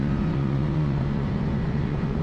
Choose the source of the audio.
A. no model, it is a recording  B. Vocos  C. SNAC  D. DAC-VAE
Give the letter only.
B